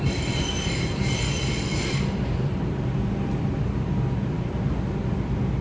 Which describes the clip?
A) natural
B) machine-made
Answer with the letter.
A